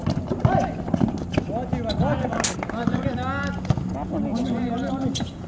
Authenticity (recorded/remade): recorded